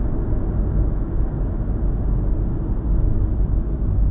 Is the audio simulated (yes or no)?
no